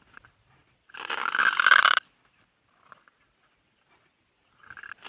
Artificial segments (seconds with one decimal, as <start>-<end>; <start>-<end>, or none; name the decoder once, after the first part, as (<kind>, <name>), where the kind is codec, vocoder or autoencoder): none